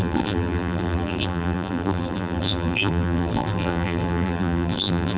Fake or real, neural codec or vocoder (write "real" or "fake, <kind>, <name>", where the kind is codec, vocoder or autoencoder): fake, vocoder, BigVGAN v2